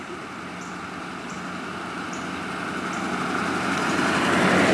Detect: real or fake real